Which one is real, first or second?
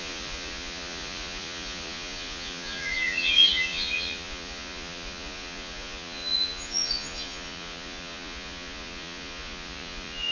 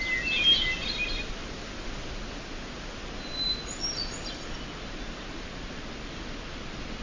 second